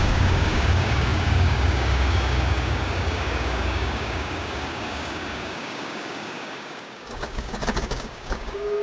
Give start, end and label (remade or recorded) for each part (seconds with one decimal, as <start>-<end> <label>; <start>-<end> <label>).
0.0-8.8 remade